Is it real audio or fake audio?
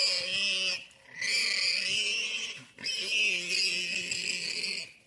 real